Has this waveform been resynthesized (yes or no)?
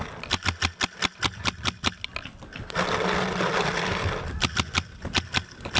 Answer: no